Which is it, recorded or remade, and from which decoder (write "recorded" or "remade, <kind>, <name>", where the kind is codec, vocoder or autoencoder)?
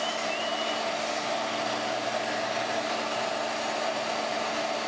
recorded